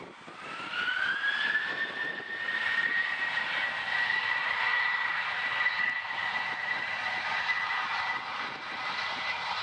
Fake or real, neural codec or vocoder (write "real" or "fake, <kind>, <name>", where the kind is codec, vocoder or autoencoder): fake, vocoder, BigVGAN v2